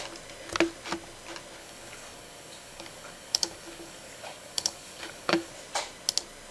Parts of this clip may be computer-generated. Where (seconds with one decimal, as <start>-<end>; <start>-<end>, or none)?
1.6-5.5